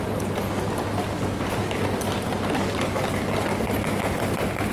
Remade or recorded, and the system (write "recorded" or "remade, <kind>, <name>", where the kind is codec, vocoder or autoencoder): recorded